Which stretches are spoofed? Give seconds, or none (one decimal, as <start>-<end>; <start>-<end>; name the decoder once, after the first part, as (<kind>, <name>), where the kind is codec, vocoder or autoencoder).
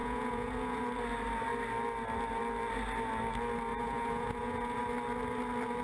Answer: 0.0-0.8 (vocoder, Vocos); 3.7-4.8